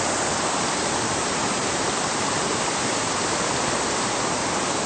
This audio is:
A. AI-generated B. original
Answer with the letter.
A